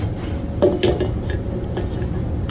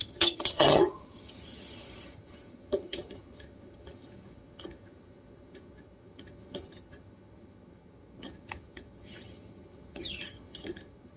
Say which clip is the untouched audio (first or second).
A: first